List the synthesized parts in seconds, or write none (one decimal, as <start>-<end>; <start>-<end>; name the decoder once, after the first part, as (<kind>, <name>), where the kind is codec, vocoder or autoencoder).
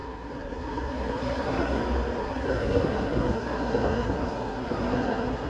0.0-1.8 (codec, SNAC); 2.2-5.5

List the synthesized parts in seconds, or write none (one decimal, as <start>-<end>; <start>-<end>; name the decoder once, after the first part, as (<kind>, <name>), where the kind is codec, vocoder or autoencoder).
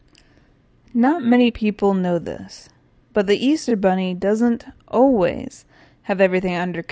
0.9-1.5 (codec, SNAC)